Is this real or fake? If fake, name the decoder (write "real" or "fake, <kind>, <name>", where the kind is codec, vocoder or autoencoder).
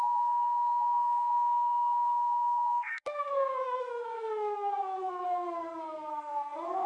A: fake, codec, SNAC